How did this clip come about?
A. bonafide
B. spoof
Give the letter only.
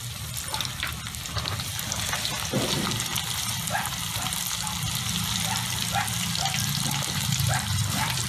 B